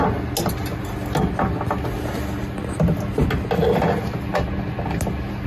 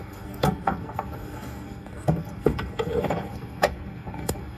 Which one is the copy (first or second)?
second